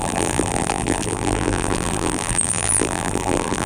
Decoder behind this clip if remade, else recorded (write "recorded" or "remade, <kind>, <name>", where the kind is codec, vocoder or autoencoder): remade, vocoder, BigVGAN v2